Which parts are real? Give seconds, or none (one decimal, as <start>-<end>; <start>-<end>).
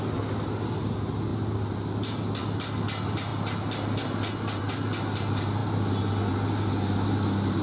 0.0-7.6